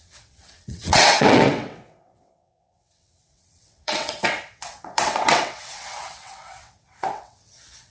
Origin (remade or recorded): remade